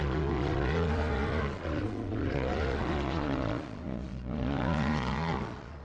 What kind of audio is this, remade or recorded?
remade